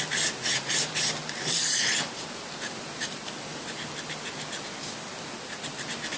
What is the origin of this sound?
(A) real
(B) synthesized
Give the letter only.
A